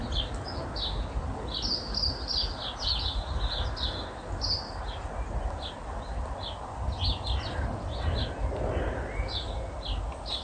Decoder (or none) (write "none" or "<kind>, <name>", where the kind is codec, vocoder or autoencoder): none